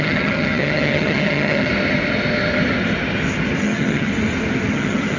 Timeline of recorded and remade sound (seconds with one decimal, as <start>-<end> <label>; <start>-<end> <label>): 0.0-1.7 remade; 1.7-3.6 recorded; 3.6-4.1 remade; 4.1-4.7 recorded; 4.7-5.2 remade